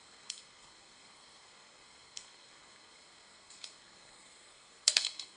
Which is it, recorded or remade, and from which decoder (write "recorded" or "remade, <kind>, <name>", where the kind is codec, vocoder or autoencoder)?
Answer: remade, codec, SNAC